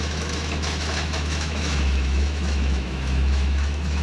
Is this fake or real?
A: fake